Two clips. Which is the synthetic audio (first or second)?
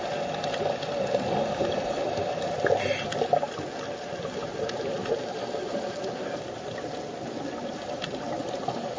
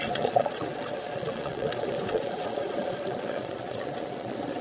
second